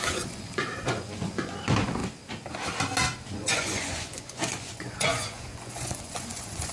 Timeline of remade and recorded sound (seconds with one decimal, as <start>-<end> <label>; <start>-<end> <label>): 0.0-2.0 remade; 2.0-3.3 recorded; 3.3-6.7 remade